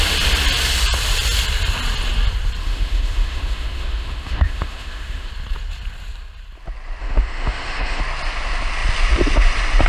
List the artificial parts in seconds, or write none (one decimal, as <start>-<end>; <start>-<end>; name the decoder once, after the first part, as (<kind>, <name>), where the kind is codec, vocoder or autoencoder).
2.6-5.3 (autoencoder, DAC-VAE); 7.0-8.0